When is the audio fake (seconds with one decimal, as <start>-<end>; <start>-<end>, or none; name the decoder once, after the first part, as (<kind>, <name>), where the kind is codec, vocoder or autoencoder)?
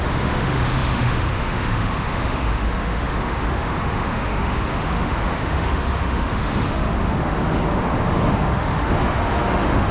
0.0-9.9 (autoencoder, DAC-VAE)